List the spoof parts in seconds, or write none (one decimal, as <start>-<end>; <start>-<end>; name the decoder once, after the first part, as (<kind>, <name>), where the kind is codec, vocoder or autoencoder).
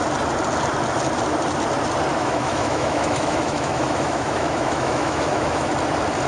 2.1-5.7 (autoencoder, DAC-VAE)